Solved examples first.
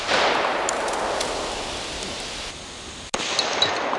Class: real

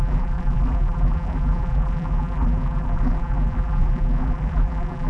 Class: fake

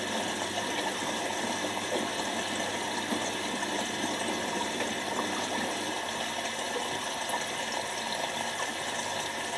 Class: real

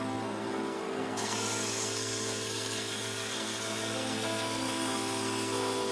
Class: fake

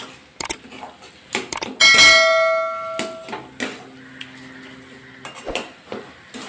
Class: real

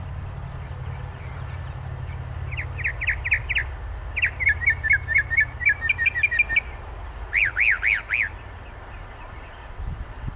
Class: real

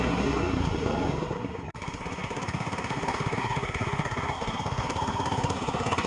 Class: fake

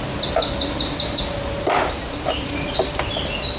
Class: real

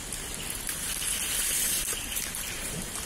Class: real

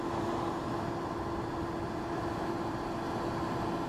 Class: real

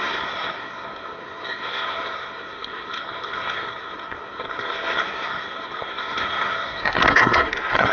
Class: fake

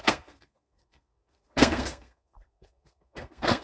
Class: fake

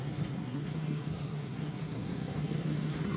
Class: fake